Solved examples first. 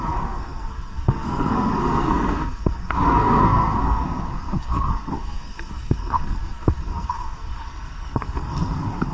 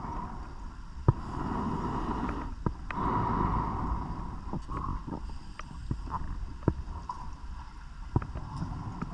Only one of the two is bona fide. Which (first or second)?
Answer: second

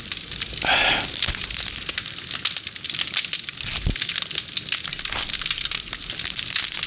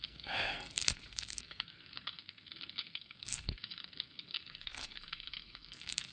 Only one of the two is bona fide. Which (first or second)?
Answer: first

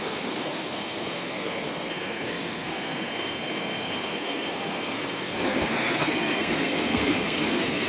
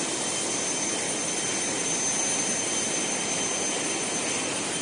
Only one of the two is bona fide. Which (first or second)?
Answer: second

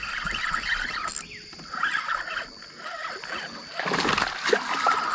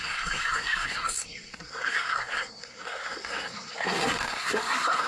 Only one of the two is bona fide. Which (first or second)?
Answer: first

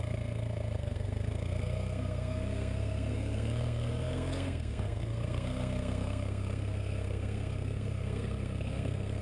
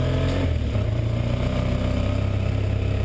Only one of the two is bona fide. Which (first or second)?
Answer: second